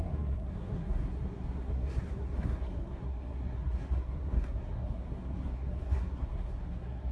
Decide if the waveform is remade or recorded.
remade